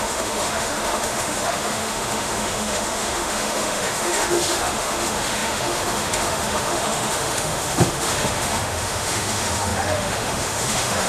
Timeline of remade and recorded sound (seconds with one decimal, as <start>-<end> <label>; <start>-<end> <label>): 0.0-11.1 remade